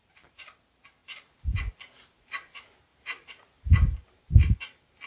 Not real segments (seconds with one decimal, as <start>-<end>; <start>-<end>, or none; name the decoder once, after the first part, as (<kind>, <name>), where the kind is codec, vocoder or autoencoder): 0.0-1.0 (vocoder, BigVGAN v2); 1.7-5.1